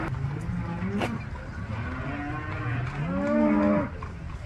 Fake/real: real